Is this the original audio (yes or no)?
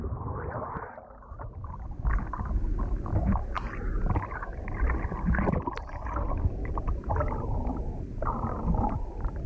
yes